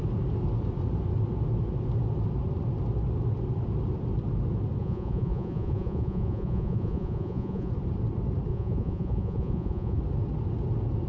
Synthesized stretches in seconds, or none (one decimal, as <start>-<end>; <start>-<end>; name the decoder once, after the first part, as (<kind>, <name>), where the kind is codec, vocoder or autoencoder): 4.8-7.7 (vocoder, Vocos); 8.5-10.0